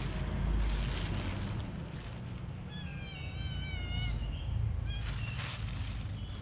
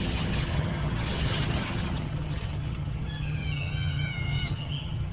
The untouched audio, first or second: first